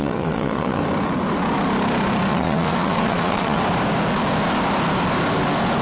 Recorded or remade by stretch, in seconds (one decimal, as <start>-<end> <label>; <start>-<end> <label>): 0.0-0.8 remade; 0.8-2.3 recorded; 2.3-3.6 remade; 3.6-5.8 recorded